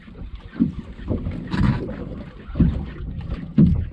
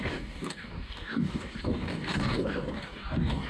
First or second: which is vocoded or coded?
second